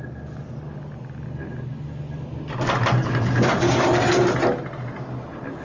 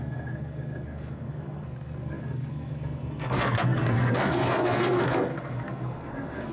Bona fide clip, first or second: first